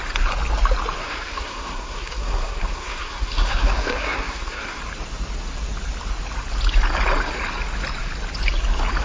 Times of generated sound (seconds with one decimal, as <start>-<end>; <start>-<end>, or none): 1.0-4.8

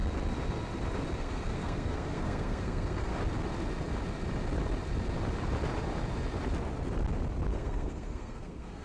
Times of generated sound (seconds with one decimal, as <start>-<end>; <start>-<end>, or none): 1.2-3.1; 7.5-8.8

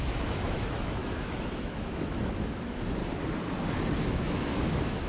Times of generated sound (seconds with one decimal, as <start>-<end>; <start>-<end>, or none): 0.0-3.0; 4.0-5.1

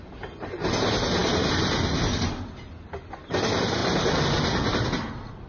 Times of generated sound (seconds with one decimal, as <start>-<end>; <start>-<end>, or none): none

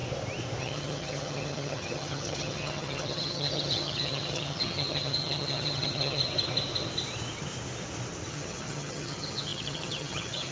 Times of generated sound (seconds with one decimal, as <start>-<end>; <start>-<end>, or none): 0.6-6.2; 8.3-10.5

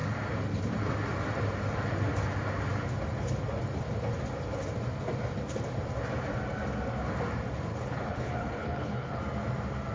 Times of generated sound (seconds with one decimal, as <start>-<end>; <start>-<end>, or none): 7.7-9.2